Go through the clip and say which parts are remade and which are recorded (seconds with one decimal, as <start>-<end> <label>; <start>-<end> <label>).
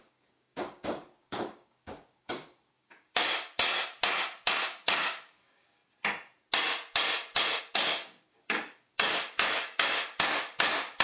0.0-3.7 remade; 3.7-4.6 recorded; 4.6-5.8 remade; 5.8-7.6 recorded; 7.6-11.0 remade